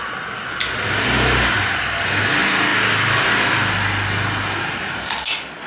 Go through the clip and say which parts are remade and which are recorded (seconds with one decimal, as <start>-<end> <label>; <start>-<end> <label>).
0.0-5.7 recorded